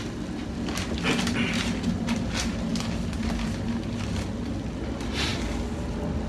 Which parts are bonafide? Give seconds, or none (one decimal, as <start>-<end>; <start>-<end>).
0.0-6.3